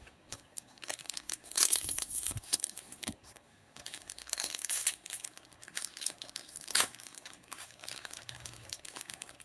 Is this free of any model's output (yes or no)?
no